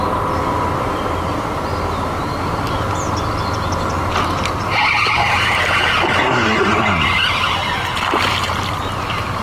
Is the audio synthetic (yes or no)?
no